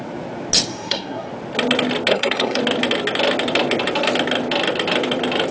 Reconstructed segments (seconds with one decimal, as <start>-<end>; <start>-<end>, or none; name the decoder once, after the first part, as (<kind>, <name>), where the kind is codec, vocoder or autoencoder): 0.7-1.3 (codec, SNAC); 2.1-2.6